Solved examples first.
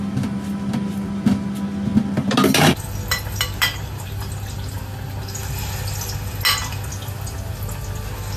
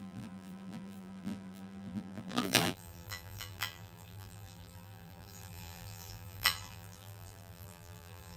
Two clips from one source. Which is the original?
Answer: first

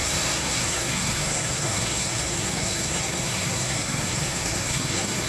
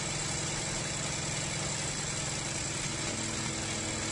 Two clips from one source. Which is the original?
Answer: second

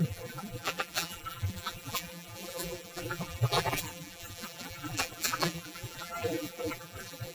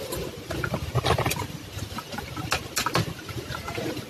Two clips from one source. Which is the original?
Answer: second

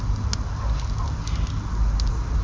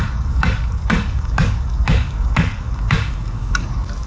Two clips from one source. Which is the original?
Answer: first